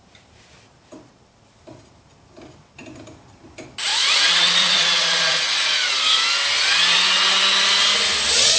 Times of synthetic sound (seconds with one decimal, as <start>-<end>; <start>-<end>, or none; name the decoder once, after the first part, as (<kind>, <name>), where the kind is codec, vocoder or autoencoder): 3.9-5.9 (vocoder, Vocos)